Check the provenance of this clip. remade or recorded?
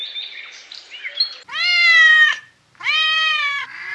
remade